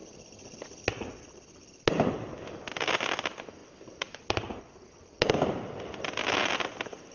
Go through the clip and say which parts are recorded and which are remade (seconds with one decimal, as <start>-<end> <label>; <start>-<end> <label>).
0.0-7.1 recorded